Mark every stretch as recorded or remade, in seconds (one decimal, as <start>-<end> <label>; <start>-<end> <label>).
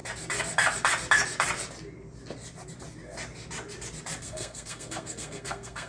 0.0-4.2 recorded; 4.2-5.9 remade